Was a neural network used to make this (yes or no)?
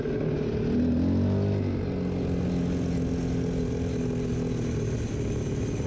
no